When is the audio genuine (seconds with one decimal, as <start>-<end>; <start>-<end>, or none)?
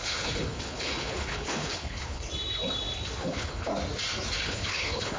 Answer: 2.3-3.2; 3.7-4.4